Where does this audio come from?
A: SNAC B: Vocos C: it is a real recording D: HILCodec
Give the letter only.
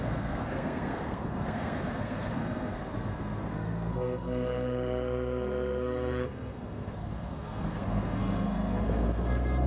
A